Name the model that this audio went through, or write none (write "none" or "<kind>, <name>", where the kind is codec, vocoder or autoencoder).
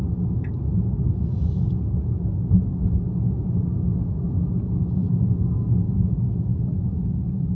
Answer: none